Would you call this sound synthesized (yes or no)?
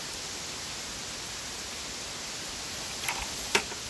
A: no